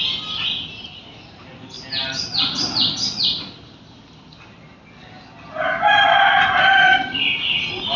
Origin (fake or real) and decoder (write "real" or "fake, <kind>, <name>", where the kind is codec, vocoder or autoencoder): real